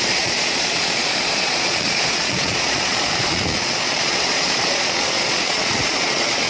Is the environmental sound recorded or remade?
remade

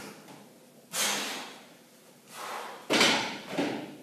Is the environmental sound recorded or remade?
recorded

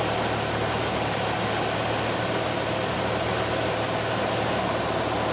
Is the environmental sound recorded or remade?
recorded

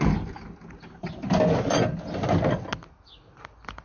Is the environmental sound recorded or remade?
recorded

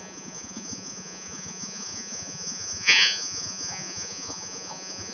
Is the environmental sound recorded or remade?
remade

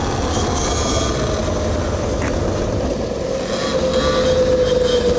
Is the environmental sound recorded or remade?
recorded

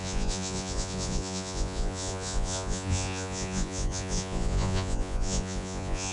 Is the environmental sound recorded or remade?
remade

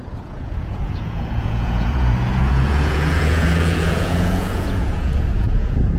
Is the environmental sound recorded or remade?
remade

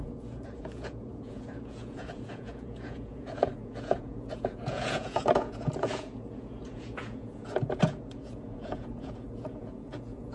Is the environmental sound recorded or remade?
remade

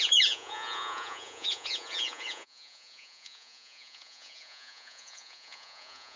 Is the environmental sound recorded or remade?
remade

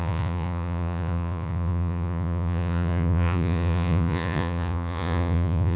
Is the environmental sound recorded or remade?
remade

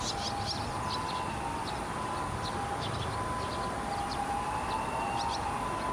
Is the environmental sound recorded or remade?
recorded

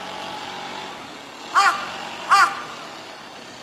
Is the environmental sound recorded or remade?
recorded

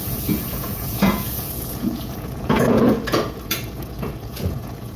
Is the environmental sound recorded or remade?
remade